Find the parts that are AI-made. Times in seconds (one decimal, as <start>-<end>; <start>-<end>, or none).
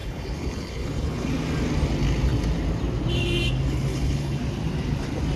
0.0-1.3; 3.9-4.4